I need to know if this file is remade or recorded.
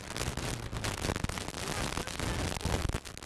recorded